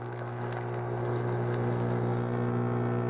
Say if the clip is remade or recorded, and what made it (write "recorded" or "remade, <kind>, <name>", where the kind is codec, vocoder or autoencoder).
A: recorded